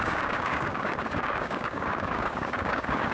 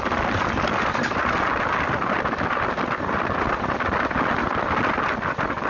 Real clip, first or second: second